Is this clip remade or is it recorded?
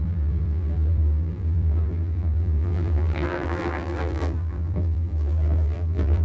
remade